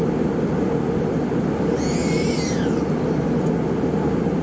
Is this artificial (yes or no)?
no